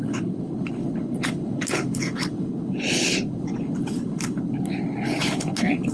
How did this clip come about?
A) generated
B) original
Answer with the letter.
A